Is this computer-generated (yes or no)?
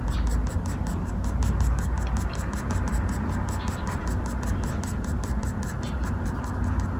no